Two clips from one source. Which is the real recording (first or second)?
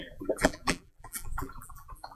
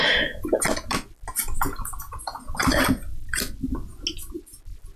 second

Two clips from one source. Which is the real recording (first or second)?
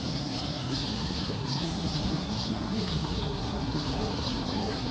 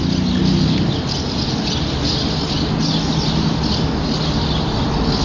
second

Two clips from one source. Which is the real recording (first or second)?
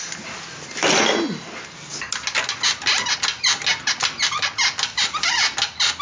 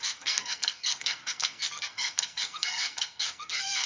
first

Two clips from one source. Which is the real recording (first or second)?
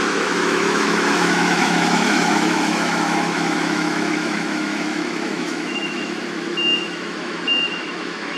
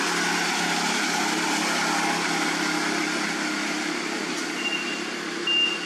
second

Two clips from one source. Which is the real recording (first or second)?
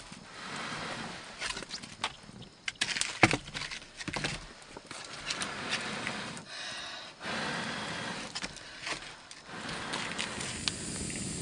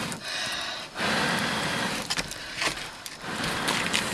first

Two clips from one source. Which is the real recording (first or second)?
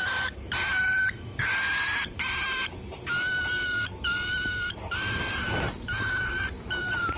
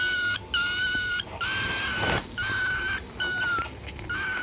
second